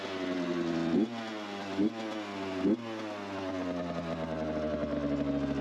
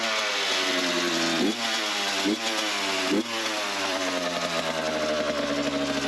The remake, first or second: second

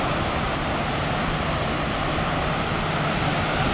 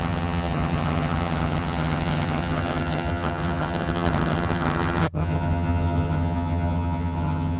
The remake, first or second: second